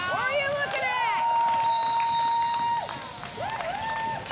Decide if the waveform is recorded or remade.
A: recorded